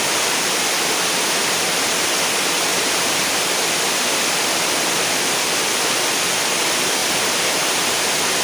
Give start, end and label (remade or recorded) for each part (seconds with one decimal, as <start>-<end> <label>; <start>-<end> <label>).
0.0-2.7 recorded; 2.7-3.5 remade; 3.5-7.0 recorded; 7.0-7.7 remade; 7.7-8.4 recorded